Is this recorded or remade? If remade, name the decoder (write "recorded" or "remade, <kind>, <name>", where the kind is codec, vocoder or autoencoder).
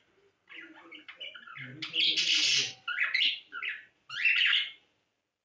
recorded